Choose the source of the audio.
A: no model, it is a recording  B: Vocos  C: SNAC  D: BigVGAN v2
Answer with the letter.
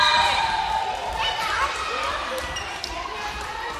D